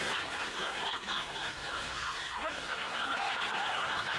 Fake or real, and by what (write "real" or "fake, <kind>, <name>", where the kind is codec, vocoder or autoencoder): fake, codec, SNAC